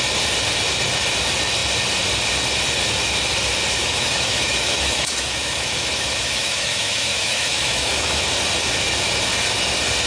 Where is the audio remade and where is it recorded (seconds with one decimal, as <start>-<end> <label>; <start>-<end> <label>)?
0.0-3.8 recorded; 3.8-8.2 remade; 8.2-10.1 recorded